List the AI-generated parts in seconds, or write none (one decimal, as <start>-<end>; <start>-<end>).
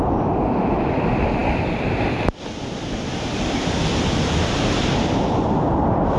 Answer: none